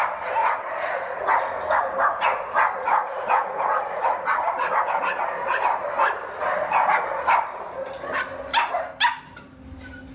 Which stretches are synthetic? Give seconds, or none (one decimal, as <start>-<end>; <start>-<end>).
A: 0.4-1.4; 2.1-4.0